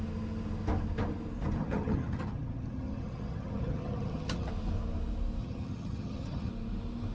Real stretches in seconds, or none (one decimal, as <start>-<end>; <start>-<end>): 0.0-1.6; 4.5-5.4; 6.5-7.1